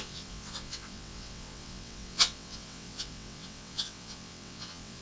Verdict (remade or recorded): remade